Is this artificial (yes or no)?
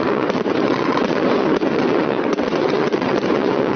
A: yes